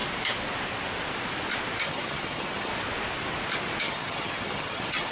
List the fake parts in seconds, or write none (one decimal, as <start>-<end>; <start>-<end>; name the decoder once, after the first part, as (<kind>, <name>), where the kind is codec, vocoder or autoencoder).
1.8-2.7 (vocoder, HiFi-GAN); 3.8-5.1